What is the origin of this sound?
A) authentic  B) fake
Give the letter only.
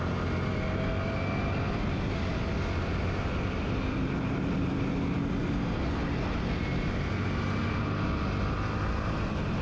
A